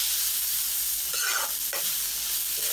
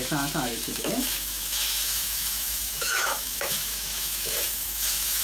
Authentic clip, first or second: first